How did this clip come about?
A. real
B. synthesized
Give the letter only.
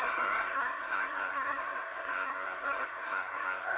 B